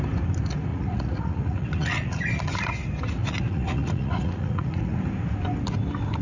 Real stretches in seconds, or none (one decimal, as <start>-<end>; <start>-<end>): 0.0-0.7; 2.2-3.2; 5.0-6.2